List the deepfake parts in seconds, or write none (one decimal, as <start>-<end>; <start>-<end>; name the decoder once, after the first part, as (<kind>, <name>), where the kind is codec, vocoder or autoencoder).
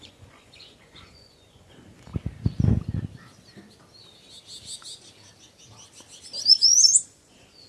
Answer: 0.0-2.1 (vocoder, Vocos); 6.5-7.7